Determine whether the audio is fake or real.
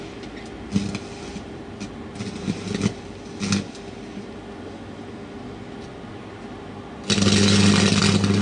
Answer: real